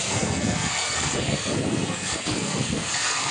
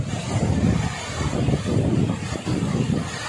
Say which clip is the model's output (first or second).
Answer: first